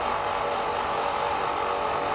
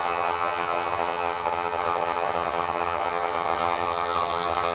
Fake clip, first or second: second